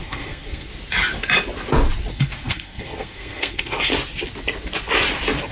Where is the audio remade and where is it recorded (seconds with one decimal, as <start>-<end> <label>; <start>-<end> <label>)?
0.0-0.7 remade; 0.7-2.1 recorded; 2.1-3.9 remade; 3.9-5.5 recorded